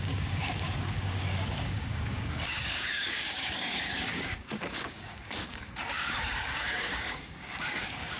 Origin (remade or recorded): remade